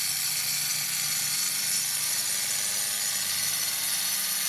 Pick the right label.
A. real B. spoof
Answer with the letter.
A